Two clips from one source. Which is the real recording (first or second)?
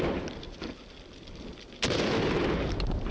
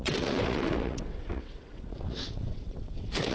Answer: first